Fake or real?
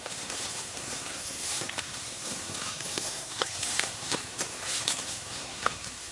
fake